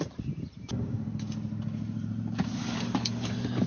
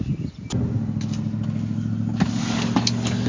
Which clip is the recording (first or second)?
second